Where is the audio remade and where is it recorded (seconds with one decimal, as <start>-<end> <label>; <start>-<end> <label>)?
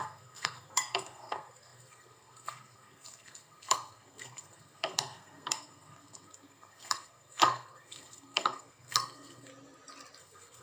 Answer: 0.0-9.5 remade; 9.5-10.2 recorded; 10.2-10.6 remade